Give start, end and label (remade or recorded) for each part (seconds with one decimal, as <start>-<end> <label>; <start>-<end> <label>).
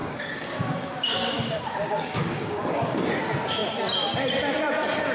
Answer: 0.0-3.1 remade; 3.1-5.1 recorded